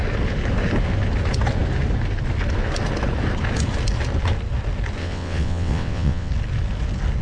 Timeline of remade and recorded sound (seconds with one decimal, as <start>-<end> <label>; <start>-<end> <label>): 0.0-5.0 recorded; 5.0-6.3 remade; 6.3-7.2 recorded